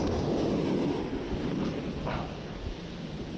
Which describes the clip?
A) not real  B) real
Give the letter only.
B